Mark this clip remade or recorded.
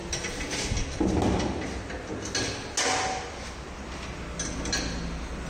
recorded